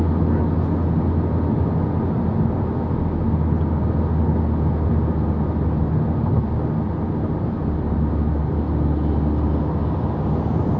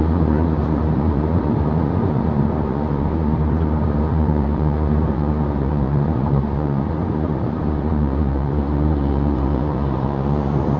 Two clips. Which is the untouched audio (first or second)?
first